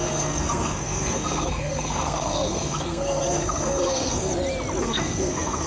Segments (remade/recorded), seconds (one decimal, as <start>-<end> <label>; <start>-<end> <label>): 0.0-4.3 remade; 4.3-4.8 recorded; 4.8-5.7 remade

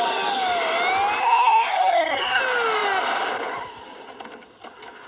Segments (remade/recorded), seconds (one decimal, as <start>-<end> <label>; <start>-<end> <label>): 0.0-1.2 recorded; 1.2-2.4 remade; 2.4-5.1 recorded

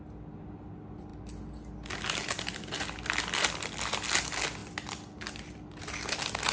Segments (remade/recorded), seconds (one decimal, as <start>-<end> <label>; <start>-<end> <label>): 0.0-6.5 recorded

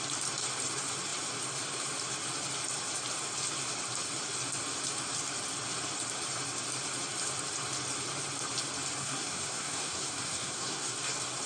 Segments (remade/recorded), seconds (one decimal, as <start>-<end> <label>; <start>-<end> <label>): 0.0-9.0 recorded; 9.0-10.9 remade; 10.9-11.5 recorded

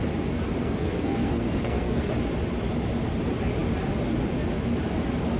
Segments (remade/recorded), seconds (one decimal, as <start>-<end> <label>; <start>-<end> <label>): 0.0-0.6 recorded; 0.6-2.1 remade; 2.1-5.4 recorded